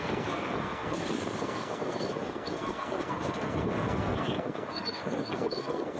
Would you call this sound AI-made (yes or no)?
yes